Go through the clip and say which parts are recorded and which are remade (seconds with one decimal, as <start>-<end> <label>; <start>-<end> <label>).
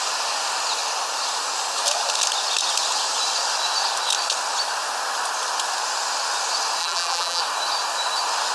0.0-6.8 recorded; 6.8-7.4 remade; 7.4-8.5 recorded